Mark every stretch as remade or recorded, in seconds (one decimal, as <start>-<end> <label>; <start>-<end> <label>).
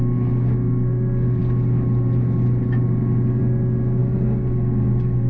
0.0-5.3 recorded